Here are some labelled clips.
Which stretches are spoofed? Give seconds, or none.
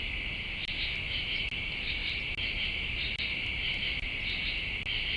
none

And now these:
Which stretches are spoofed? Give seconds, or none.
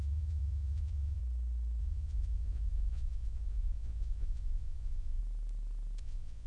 0.0-1.2 (vocoder, Vocos); 1.8-5.2; 6.0-6.5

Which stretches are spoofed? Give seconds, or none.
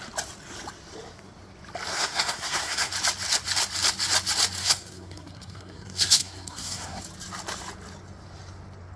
1.9-2.9 (codec, SNAC); 4.6-7.0